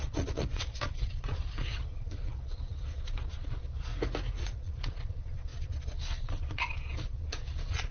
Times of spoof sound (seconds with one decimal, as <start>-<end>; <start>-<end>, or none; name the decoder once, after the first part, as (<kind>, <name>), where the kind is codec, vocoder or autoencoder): 0.0-3.9 (vocoder, Vocos); 4.4-7.9